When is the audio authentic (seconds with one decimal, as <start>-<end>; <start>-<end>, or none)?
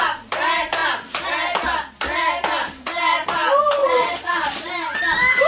0.0-3.8; 4.7-5.5